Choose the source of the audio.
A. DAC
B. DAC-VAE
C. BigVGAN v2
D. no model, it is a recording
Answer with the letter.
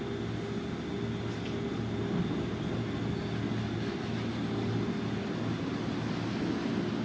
D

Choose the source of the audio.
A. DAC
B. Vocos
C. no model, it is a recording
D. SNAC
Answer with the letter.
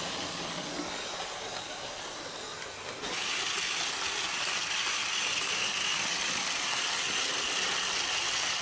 C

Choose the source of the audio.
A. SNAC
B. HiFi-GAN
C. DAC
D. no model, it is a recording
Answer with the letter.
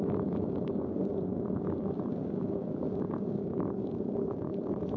C